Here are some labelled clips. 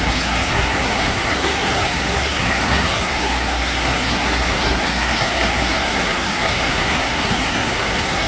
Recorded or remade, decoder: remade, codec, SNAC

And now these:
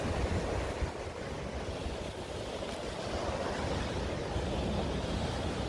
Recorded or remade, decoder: recorded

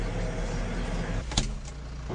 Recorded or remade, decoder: recorded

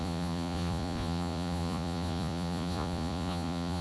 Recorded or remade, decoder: remade, vocoder, Vocos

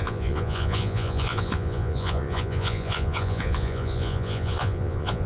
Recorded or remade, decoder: remade, vocoder, Vocos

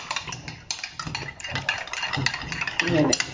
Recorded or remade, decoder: recorded